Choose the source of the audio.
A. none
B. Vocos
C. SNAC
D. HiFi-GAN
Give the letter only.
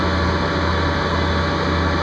A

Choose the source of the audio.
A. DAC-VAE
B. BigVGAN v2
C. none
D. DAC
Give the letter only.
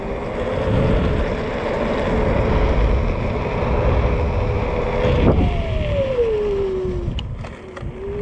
C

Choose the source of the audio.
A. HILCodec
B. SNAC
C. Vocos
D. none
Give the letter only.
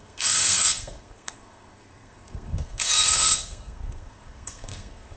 B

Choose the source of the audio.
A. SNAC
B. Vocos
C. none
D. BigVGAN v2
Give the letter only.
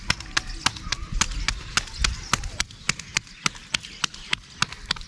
C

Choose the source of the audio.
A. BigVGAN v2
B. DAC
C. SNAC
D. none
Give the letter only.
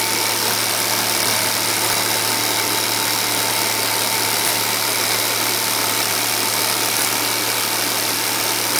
D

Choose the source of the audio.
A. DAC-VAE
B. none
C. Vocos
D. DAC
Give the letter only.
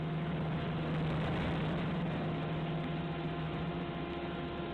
B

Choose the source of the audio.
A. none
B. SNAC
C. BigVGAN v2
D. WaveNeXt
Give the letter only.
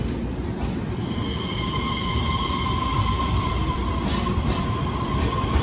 C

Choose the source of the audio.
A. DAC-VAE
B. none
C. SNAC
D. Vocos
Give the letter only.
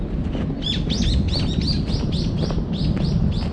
B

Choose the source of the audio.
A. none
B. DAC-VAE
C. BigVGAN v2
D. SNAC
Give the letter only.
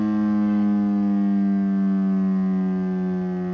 A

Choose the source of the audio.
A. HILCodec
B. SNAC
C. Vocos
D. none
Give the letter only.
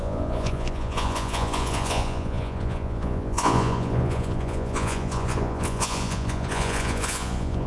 C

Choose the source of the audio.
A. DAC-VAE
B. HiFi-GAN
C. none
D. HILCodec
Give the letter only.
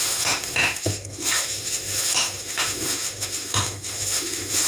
A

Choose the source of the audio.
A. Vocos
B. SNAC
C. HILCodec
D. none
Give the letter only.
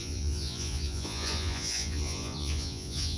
A